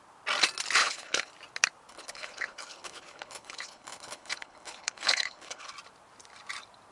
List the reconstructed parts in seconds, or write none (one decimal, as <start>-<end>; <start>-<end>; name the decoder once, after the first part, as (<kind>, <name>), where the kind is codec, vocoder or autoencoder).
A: 0.8-1.3 (codec, HILCodec); 1.9-5.7